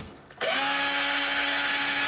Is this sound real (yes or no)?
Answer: no